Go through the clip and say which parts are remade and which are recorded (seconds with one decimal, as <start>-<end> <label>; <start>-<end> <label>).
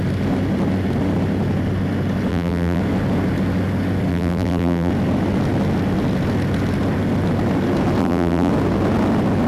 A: 0.0-2.3 recorded; 2.3-2.8 remade; 2.8-4.1 recorded; 4.1-4.9 remade; 4.9-8.0 recorded; 8.0-8.5 remade; 8.5-9.5 recorded